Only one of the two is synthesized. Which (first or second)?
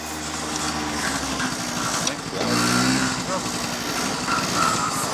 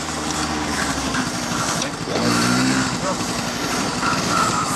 second